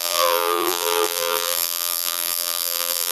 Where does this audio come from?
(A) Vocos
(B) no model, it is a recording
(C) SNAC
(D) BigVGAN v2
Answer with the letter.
D